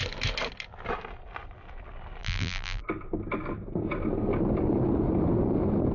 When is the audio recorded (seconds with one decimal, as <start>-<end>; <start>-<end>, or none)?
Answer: 0.0-2.2; 2.8-5.9